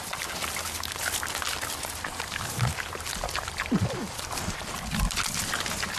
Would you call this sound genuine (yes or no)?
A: yes